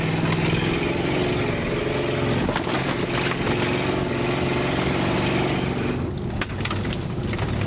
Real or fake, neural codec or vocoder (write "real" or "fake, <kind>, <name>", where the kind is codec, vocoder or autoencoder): real